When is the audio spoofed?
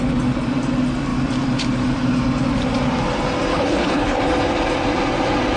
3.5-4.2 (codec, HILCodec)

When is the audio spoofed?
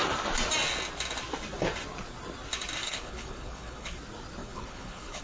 2.8-4.0 (codec, HILCodec); 4.4-5.2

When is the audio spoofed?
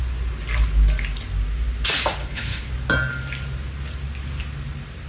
2.2-2.7 (codec, HILCodec)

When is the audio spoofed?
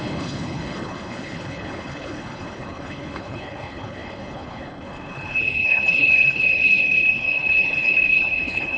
0.0-8.8 (codec, HILCodec)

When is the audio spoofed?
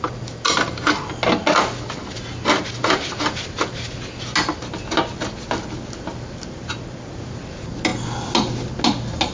none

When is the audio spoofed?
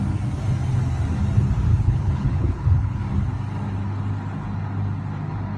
1.7-3.0 (codec, HILCodec)